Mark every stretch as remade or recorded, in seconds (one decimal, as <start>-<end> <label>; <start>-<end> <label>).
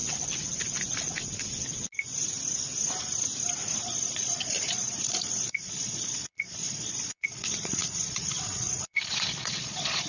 0.0-3.8 recorded; 3.8-10.1 remade